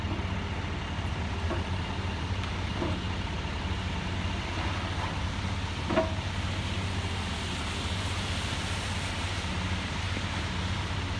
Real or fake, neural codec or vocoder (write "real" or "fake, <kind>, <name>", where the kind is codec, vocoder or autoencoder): real